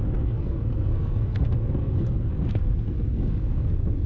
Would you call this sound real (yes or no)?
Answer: no